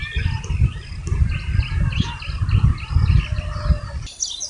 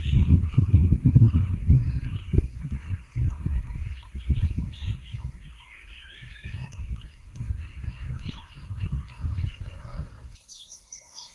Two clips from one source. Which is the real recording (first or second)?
first